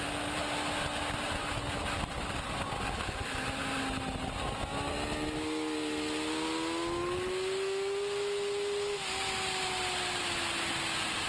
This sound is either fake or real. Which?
real